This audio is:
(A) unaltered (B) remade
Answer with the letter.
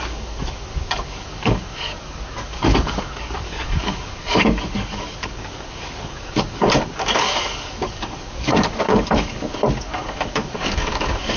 B